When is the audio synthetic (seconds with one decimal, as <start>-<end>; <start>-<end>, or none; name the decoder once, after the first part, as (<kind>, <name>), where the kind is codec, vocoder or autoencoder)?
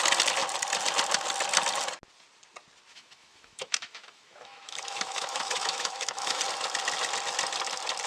2.9-6.4 (autoencoder, DAC-VAE)